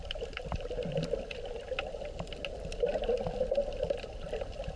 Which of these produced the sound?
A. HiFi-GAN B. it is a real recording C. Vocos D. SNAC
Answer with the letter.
B